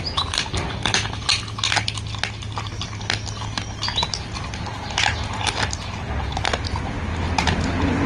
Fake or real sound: real